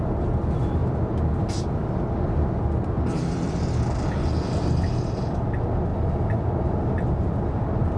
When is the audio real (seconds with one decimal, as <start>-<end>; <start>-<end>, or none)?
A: 0.0-8.0